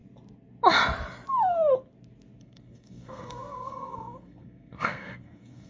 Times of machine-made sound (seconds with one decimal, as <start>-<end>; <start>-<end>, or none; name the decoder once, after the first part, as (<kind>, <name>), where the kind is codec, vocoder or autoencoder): 2.4-5.7 (codec, SNAC)